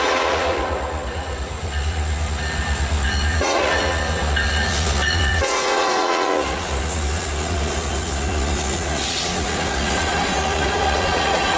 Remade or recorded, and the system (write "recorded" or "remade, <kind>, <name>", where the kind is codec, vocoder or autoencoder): remade, vocoder, Vocos